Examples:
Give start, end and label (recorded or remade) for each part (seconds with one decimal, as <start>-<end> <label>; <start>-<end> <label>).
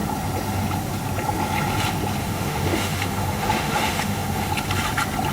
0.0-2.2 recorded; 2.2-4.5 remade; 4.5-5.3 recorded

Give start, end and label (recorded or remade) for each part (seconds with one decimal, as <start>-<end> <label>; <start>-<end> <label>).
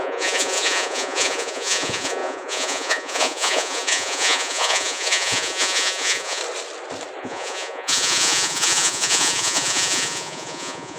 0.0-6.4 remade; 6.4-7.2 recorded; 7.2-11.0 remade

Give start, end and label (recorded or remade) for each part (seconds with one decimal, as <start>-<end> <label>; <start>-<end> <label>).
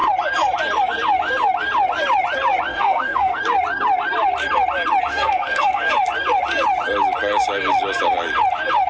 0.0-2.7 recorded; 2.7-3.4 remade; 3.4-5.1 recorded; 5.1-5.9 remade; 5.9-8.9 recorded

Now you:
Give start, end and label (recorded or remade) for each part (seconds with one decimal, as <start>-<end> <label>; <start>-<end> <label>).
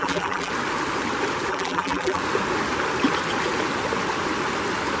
0.0-0.5 remade; 0.5-1.5 recorded; 1.5-2.2 remade; 2.2-5.0 recorded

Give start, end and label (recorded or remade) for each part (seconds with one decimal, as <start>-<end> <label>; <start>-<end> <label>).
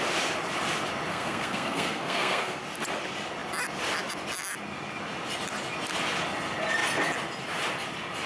0.0-1.1 recorded; 1.1-2.6 remade; 2.6-8.3 recorded